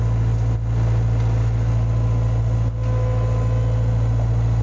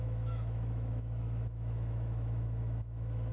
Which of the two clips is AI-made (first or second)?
second